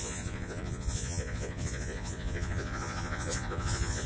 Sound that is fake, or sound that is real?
fake